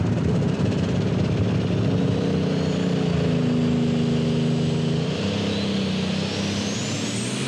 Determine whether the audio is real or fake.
real